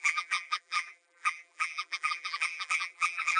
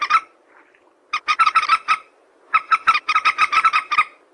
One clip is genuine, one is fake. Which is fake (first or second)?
first